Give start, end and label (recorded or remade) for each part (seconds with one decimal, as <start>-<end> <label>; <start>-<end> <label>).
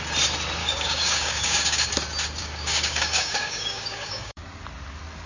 0.0-0.6 recorded; 0.6-1.9 remade; 1.9-2.4 recorded; 2.4-4.4 remade; 4.4-5.3 recorded